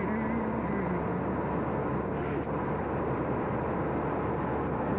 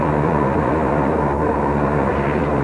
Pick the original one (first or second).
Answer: first